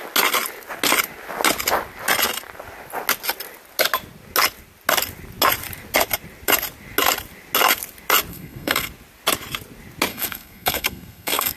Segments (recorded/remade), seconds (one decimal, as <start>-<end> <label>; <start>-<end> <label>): 0.0-8.3 recorded; 8.3-8.9 remade; 8.9-10.1 recorded; 10.1-11.6 remade